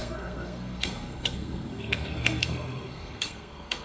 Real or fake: fake